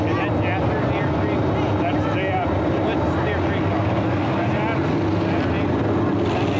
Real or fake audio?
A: real